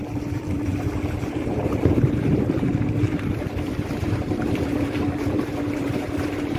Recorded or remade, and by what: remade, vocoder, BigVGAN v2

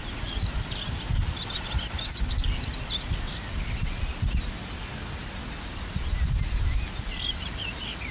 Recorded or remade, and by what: recorded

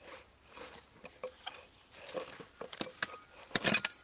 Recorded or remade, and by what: recorded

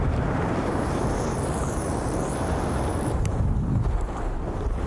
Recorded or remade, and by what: remade, vocoder, BigVGAN v2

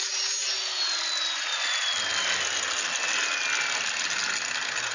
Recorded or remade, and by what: recorded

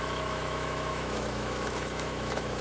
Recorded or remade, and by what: remade, autoencoder, DAC-VAE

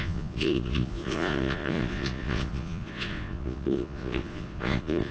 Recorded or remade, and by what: remade, vocoder, Vocos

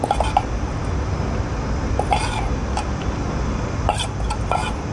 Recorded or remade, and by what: recorded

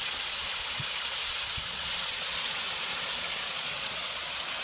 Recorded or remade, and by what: remade, vocoder, Vocos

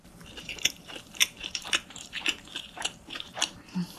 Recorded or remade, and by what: remade, vocoder, BigVGAN v2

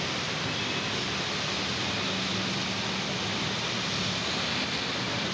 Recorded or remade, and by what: recorded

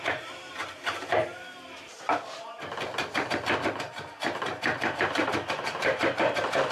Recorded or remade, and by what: remade, vocoder, BigVGAN v2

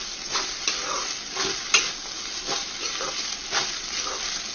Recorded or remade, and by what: recorded